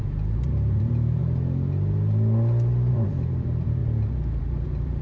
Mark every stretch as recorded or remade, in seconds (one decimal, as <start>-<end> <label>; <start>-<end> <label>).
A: 0.0-1.2 remade; 1.2-2.9 recorded; 2.9-3.8 remade; 3.8-4.4 recorded; 4.4-5.0 remade